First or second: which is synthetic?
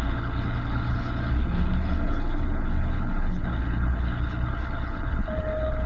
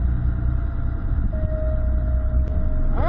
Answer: first